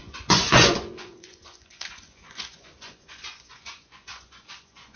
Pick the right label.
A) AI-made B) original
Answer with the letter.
A